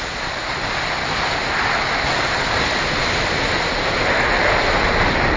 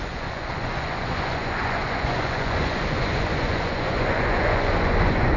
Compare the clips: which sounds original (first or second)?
first